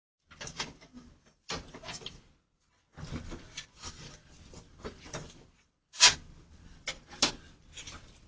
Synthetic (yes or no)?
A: no